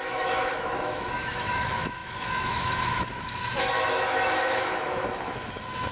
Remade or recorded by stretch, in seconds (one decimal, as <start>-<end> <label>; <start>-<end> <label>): 0.0-5.9 remade